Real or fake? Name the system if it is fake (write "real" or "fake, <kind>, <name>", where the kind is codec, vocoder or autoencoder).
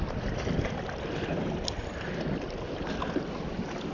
real